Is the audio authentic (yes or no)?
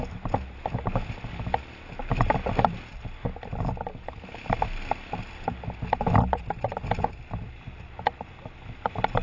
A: yes